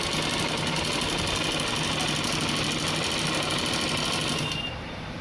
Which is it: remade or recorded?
recorded